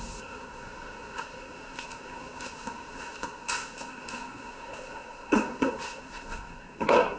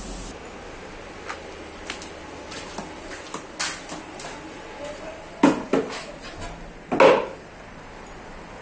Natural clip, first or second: second